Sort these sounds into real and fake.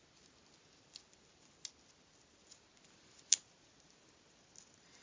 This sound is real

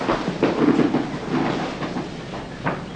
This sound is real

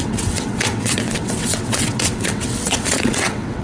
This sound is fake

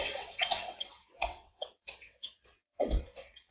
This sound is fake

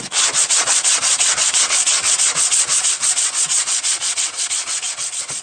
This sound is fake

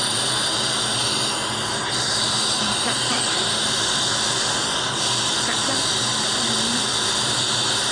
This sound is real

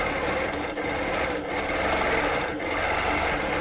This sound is real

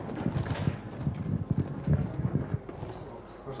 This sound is real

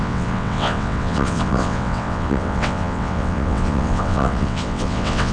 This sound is fake